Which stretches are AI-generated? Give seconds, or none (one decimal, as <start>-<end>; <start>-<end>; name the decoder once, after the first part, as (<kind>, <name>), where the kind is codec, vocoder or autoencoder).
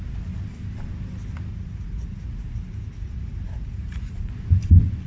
1.5-4.3 (vocoder, Vocos)